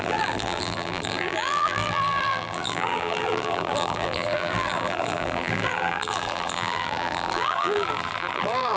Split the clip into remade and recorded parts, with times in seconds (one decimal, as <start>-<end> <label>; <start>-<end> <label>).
0.0-8.8 remade